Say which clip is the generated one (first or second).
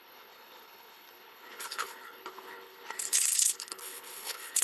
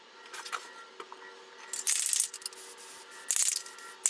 first